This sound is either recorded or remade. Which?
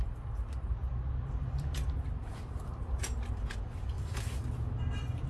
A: remade